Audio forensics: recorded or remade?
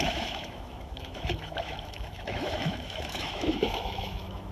remade